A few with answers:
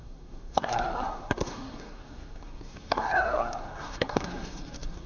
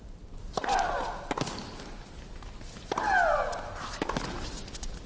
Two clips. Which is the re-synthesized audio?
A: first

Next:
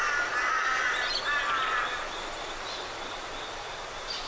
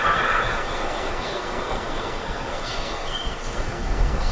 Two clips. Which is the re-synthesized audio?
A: second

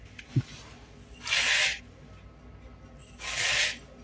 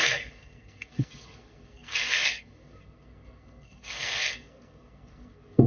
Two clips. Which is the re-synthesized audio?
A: second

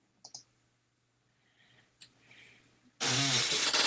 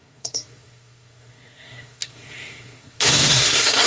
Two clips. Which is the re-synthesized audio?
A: second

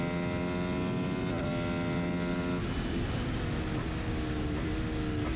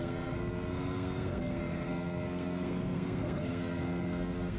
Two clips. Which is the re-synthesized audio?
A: second